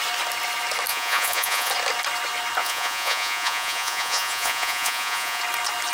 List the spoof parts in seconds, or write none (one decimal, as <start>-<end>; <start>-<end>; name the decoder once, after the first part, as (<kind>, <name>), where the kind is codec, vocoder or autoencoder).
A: 0.9-1.7 (vocoder, Vocos); 2.6-5.4